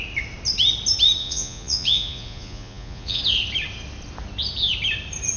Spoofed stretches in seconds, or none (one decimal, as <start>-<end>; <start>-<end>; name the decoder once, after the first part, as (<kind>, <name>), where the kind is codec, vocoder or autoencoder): 1.2-3.2 (vocoder, Vocos)